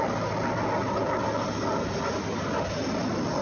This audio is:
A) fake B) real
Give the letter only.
B